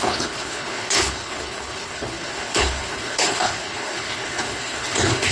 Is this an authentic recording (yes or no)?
no